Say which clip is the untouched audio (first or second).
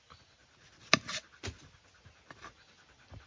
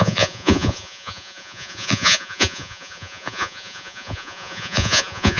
first